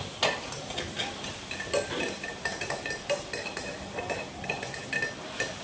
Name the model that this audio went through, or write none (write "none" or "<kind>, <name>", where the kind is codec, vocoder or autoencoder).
none